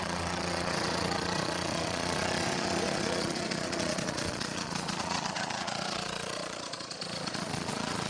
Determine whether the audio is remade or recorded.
remade